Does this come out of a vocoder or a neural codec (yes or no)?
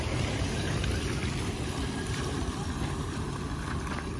yes